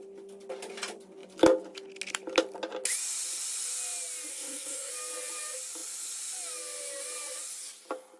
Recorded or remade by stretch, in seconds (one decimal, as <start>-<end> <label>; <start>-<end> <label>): 0.0-4.3 recorded; 4.3-4.9 remade; 4.9-8.2 recorded